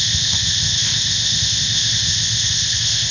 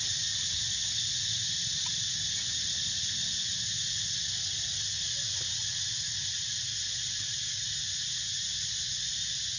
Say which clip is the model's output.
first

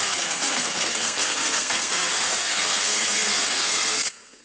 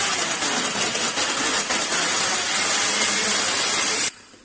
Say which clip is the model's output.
first